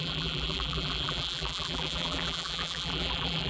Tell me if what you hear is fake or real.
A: fake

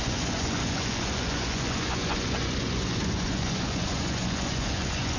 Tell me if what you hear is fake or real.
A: fake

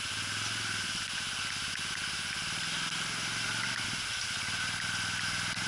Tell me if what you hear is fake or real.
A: real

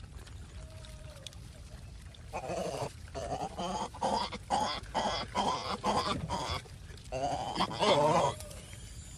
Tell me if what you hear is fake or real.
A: fake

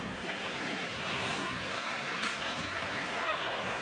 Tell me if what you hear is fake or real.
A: fake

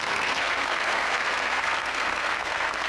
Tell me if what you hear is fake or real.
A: fake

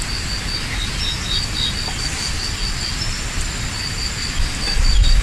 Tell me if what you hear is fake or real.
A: real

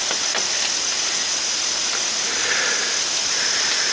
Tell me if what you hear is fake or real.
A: real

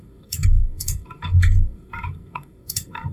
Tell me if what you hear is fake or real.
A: fake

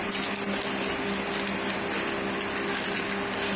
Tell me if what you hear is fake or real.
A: real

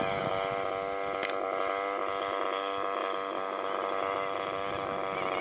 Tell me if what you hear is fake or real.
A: real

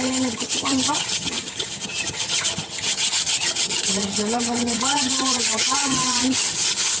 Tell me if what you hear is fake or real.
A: fake